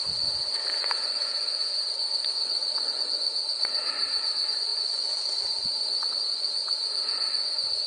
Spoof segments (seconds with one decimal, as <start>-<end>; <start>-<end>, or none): 0.0-7.9